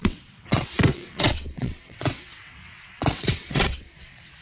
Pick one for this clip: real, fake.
fake